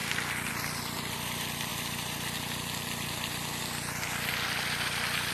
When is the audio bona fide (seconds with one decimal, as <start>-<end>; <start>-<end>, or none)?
0.0-0.5